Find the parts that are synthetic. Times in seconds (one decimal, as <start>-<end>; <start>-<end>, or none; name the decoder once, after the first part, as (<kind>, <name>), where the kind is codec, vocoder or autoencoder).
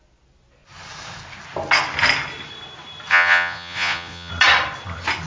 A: 3.1-4.3 (vocoder, Vocos)